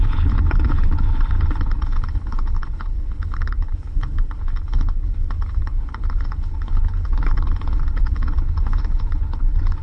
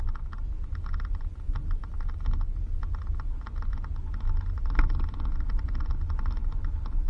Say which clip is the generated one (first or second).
first